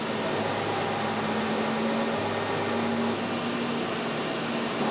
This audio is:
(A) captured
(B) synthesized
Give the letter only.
A